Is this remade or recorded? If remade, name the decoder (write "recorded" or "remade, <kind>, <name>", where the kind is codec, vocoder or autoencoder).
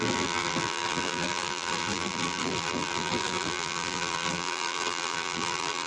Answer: remade, vocoder, BigVGAN v2